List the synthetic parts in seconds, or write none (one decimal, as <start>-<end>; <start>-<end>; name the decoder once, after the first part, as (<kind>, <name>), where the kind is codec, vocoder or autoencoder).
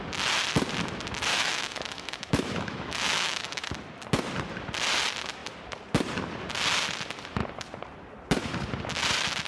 1.3-3.7 (autoencoder, DAC-VAE)